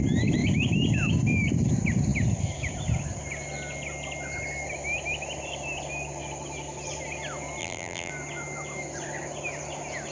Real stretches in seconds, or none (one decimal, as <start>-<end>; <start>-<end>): 0.0-7.6; 8.1-10.1